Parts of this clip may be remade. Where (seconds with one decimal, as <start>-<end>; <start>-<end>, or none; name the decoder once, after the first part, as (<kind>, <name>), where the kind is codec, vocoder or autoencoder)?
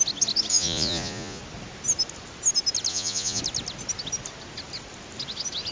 0.5-1.4 (vocoder, Vocos); 2.9-3.4